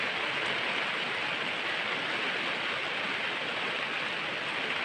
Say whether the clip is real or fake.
real